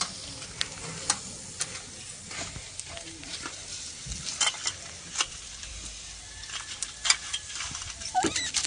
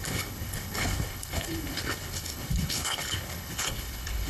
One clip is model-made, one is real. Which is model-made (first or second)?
second